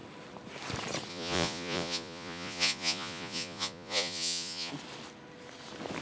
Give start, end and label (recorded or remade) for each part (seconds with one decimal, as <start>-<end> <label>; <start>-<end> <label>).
0.0-1.1 recorded; 1.1-4.7 remade; 4.7-6.0 recorded